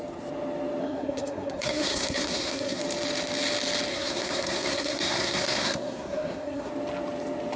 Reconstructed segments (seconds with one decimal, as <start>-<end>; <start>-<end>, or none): 0.8-2.8; 3.9-6.7

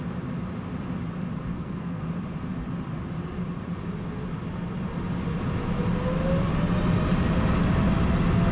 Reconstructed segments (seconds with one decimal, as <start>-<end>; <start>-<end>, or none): 1.5-2.0